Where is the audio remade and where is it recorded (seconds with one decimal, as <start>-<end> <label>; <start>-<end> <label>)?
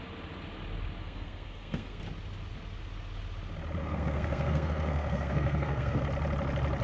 0.0-1.0 recorded; 1.0-2.0 remade; 2.0-3.8 recorded; 3.8-6.0 remade; 6.0-6.8 recorded